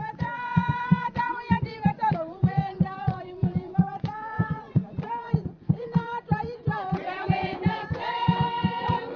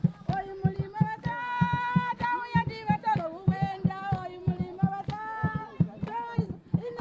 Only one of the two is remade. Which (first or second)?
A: first